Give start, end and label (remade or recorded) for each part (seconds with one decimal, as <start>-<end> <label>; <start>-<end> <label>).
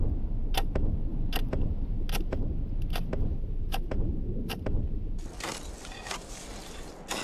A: 0.0-7.2 recorded